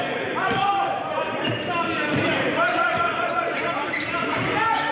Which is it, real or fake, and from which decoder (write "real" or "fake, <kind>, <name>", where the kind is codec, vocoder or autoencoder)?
fake, vocoder, BigVGAN v2